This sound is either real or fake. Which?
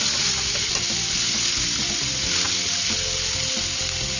real